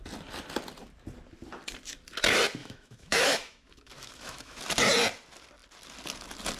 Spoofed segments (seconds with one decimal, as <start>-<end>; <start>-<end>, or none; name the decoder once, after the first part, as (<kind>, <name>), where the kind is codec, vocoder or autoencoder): 2.6-4.6 (autoencoder, DAC-VAE)